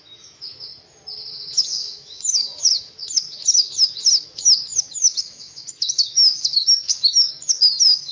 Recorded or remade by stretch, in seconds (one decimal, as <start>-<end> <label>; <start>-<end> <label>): 0.0-0.7 remade; 0.7-1.3 recorded; 1.3-8.1 remade